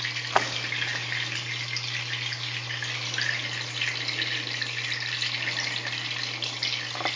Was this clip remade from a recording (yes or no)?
no